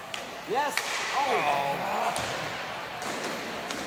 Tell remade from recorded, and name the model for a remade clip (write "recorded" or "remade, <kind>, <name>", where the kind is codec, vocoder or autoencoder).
remade, vocoder, BigVGAN v2